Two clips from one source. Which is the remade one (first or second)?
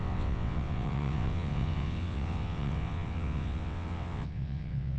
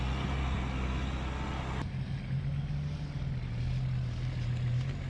first